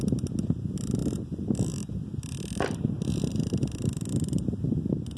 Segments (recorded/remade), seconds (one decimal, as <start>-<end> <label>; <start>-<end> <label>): 0.0-5.2 recorded